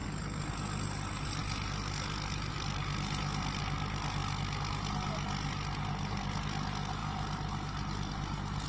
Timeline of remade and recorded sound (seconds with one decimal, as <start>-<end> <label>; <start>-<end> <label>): 0.0-0.5 remade; 0.5-1.4 recorded; 1.4-3.6 remade; 3.6-7.0 recorded; 7.0-8.1 remade; 8.1-8.7 recorded